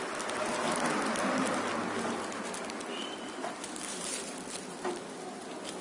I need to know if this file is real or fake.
real